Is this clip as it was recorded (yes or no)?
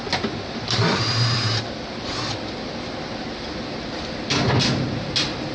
yes